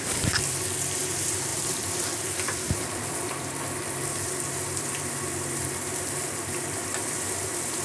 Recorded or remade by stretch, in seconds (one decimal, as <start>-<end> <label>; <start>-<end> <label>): 0.0-7.8 remade